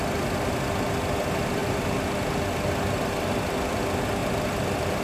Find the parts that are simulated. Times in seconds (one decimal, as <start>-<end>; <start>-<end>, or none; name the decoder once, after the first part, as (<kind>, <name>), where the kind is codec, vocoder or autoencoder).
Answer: 4.2-5.0 (vocoder, BigVGAN v2)